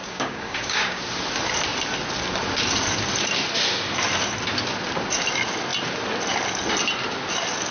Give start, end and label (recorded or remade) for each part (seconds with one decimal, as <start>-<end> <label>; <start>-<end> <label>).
0.0-1.0 remade; 1.0-7.7 recorded